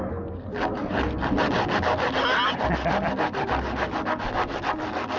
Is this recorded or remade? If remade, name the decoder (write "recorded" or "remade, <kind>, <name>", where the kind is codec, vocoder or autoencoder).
recorded